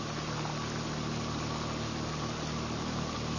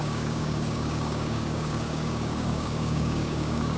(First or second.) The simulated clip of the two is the second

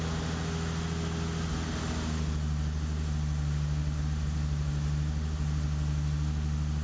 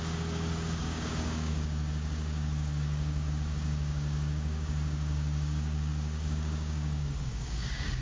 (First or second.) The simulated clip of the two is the second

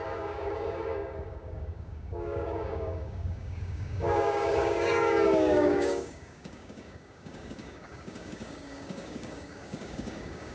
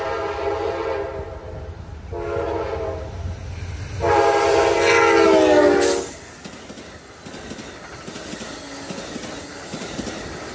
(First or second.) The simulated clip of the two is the first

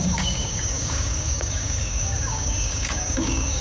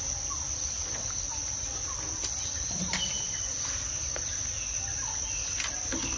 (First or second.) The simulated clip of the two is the first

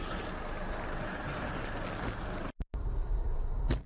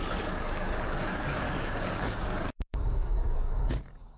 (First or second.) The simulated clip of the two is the second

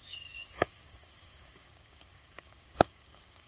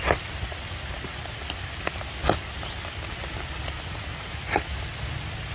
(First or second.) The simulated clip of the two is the first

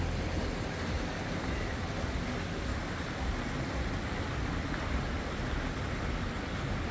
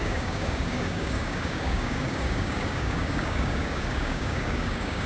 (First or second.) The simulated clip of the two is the second